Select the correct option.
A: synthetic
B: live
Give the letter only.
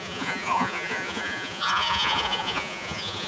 A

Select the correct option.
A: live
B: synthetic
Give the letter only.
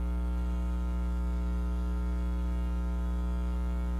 B